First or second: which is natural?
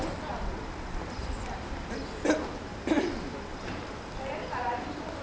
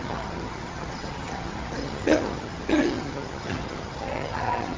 first